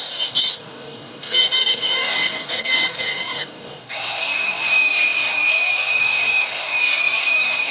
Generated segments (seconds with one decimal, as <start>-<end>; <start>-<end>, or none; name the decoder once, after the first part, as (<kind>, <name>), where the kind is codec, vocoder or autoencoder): 0.0-7.7 (codec, DAC)